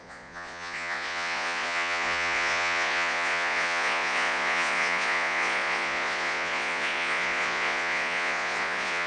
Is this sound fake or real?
fake